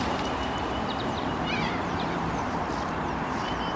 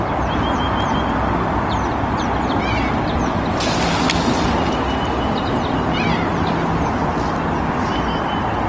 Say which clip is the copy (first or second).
first